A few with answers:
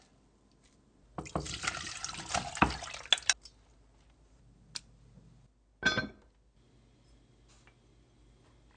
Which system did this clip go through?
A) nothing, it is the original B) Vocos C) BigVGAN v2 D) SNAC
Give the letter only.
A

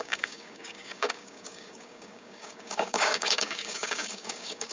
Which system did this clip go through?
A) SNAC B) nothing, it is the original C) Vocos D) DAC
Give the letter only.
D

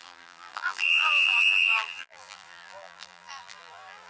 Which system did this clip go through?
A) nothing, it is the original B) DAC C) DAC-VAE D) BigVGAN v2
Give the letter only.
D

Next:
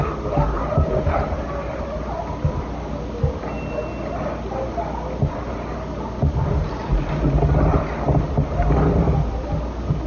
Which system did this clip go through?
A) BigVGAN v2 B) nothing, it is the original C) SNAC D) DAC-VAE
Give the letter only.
B